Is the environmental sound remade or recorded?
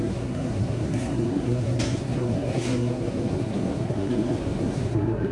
remade